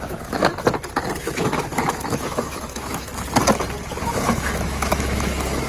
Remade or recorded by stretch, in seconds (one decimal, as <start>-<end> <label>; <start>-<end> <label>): 0.0-0.5 remade; 0.5-1.2 recorded; 1.2-3.1 remade; 3.1-4.0 recorded; 4.0-5.7 remade